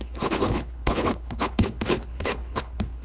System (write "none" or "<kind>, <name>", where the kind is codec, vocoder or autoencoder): codec, HILCodec